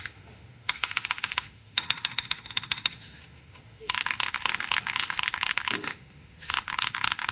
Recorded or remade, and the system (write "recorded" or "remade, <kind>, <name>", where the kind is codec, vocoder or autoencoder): remade, autoencoder, DAC-VAE